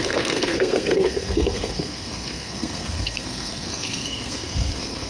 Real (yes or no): no